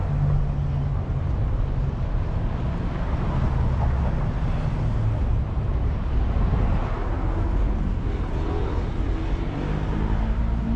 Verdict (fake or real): real